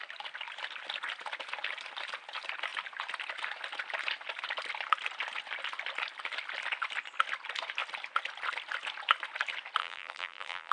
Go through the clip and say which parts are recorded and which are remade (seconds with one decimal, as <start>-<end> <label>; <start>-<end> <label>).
0.0-9.8 recorded; 9.8-10.7 remade